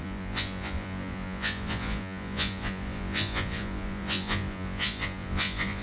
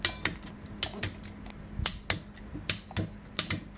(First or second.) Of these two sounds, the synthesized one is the first